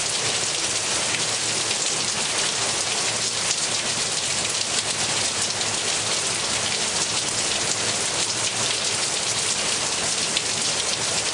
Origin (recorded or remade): recorded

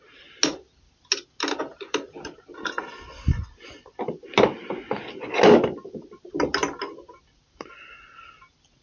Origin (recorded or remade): recorded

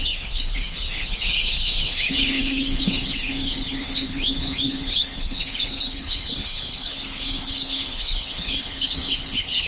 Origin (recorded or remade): remade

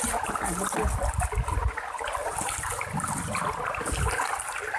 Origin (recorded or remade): recorded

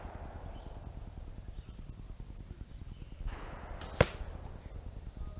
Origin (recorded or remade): recorded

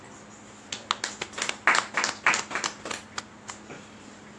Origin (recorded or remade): recorded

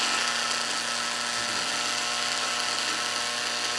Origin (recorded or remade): recorded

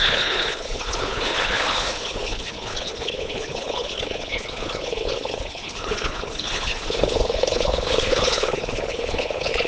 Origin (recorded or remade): remade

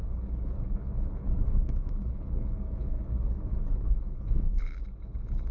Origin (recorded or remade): remade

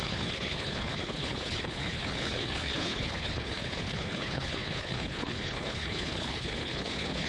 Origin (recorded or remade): remade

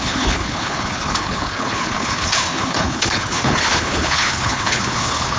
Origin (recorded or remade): remade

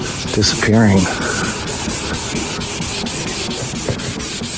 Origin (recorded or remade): recorded